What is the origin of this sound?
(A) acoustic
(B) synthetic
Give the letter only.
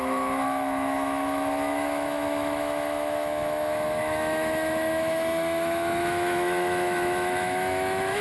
B